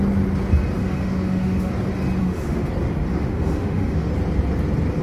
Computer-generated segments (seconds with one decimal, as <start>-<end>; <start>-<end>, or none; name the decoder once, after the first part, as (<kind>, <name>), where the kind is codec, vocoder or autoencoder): 0.8-1.7 (autoencoder, DAC-VAE); 2.2-2.7; 3.1-4.1